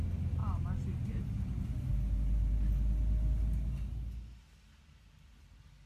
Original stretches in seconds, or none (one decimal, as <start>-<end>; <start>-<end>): 0.0-5.9